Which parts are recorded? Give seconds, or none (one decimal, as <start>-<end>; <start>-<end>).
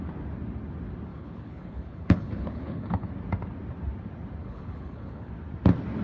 0.0-1.1; 3.1-4.4; 5.3-6.0